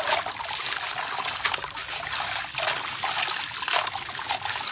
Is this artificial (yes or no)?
no